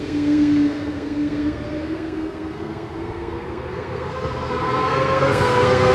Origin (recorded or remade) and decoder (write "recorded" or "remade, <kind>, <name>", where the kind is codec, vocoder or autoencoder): remade, codec, SNAC